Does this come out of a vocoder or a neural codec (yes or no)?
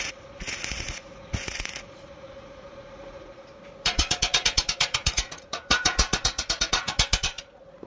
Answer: yes